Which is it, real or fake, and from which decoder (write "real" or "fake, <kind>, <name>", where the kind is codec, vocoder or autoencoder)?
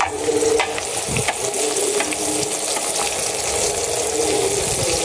real